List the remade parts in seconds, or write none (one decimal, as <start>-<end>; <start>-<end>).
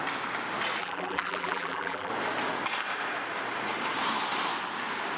0.8-2.1